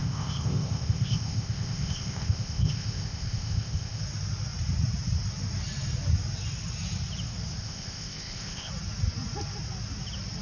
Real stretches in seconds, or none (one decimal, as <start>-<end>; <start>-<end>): 4.0-7.6; 8.7-10.4